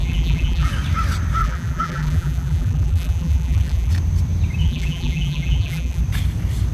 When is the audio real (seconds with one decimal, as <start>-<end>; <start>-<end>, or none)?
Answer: 0.7-1.4; 3.9-4.6; 6.0-6.7